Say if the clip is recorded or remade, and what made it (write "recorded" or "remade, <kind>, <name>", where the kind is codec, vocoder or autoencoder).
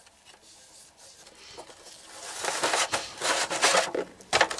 recorded